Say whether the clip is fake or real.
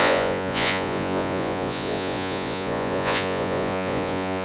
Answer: fake